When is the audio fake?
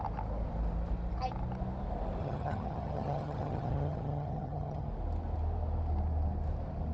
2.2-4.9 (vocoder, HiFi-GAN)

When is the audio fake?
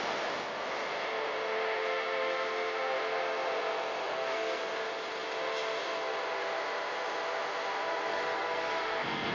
4.1-4.7 (codec, SNAC); 8.1-9.3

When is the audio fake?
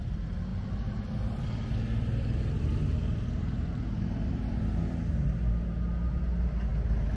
0.5-4.8 (vocoder, BigVGAN v2); 6.7-7.2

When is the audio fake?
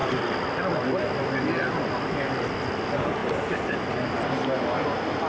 none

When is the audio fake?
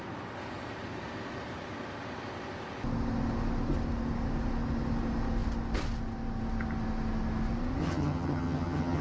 7.8-9.0 (vocoder, HiFi-GAN)